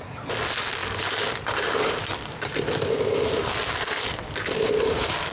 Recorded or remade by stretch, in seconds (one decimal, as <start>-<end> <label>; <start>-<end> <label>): 0.0-5.3 recorded

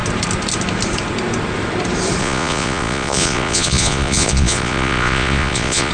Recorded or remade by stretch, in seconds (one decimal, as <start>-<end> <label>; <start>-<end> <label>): 0.0-2.2 recorded; 2.2-5.9 remade

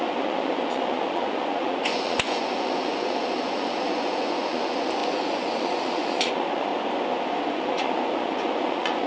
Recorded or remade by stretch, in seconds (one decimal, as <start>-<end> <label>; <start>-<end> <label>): 0.0-6.7 remade; 6.7-7.5 recorded; 7.5-9.1 remade

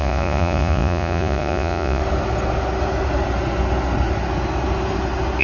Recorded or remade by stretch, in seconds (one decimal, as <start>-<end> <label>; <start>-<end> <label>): 0.0-2.0 remade; 2.0-5.4 recorded

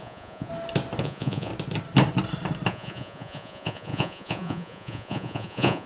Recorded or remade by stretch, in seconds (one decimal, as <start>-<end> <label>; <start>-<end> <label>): 0.0-0.5 remade; 0.5-1.0 recorded; 1.0-1.5 remade; 1.5-2.7 recorded; 2.7-5.9 remade